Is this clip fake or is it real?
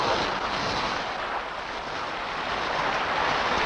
real